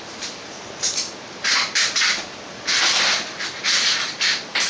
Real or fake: real